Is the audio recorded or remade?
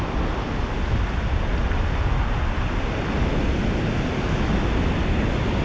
recorded